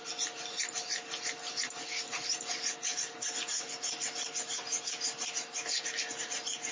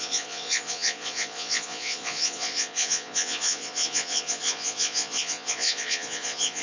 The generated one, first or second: second